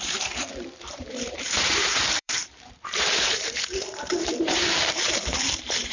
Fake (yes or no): yes